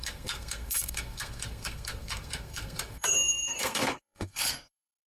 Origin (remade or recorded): remade